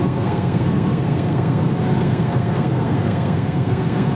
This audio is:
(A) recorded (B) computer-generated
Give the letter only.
B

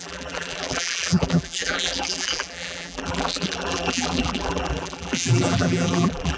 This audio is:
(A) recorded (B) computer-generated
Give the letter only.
B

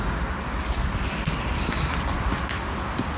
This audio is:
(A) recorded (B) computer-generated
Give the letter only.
A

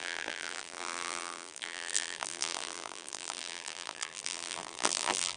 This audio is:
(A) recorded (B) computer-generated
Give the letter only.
B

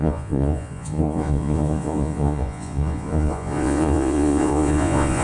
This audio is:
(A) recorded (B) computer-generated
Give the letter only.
B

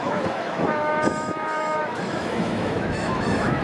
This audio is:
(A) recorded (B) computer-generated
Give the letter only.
B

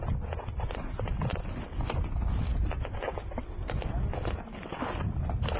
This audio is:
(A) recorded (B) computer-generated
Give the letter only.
A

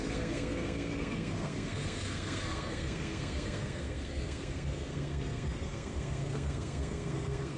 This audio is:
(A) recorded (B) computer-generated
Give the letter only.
B